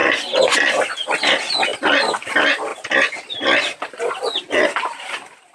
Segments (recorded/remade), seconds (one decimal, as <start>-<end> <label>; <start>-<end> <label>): 0.0-5.5 recorded